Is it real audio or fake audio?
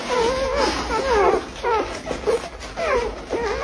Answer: real